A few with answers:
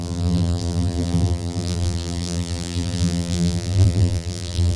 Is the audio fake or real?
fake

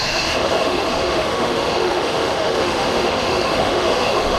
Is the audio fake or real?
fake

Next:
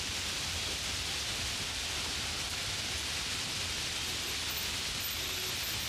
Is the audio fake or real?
real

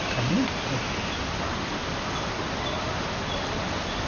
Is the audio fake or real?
real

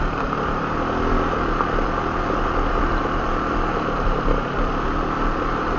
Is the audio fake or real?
fake